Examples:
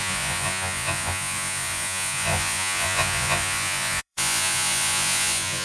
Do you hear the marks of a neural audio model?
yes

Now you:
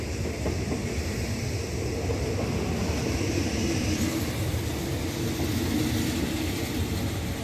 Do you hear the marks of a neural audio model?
no